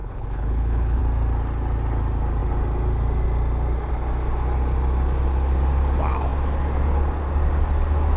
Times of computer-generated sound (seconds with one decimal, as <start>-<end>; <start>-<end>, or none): 0.0-1.0

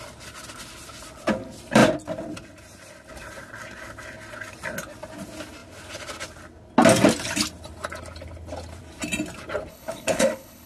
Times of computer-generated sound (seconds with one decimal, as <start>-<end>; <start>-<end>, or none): 9.7-10.7